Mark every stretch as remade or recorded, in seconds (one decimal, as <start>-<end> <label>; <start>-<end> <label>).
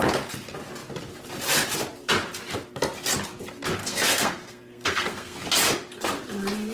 0.0-3.8 recorded; 3.8-5.4 remade; 5.4-6.7 recorded